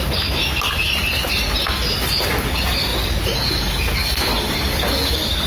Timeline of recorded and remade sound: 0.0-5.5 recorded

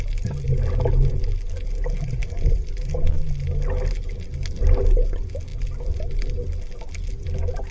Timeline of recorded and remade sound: 0.0-2.2 recorded; 2.2-2.9 remade; 2.9-7.7 recorded

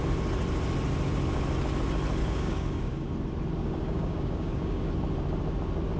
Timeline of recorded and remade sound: 0.0-2.2 recorded; 2.2-3.1 remade; 3.1-3.6 recorded; 3.6-4.9 remade; 4.9-6.0 recorded